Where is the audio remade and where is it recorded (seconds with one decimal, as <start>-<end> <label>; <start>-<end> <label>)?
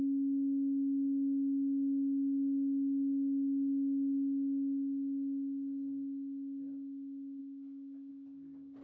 0.0-7.4 recorded; 7.4-8.1 remade; 8.1-8.8 recorded